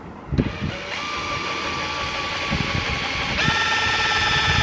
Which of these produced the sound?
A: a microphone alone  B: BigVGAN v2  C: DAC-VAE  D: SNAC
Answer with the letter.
A